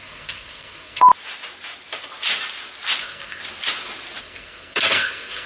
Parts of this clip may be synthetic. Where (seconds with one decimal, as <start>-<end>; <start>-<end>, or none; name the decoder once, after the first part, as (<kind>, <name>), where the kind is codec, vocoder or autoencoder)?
0.0-1.1 (codec, SNAC); 3.0-3.4; 4.2-5.5